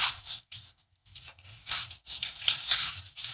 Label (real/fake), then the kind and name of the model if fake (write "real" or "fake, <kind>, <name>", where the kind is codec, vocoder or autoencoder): fake, codec, SNAC